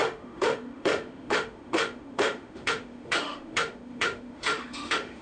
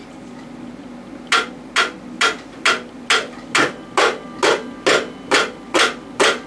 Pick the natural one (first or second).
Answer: second